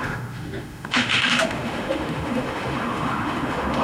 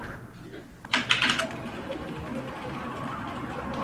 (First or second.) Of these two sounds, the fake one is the first